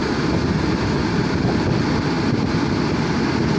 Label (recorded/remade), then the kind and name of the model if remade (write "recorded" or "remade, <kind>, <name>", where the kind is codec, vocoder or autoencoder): recorded